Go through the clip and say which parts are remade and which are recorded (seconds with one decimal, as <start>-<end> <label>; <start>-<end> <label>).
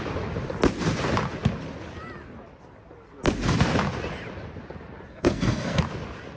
0.0-5.1 recorded; 5.1-5.8 remade; 5.8-6.4 recorded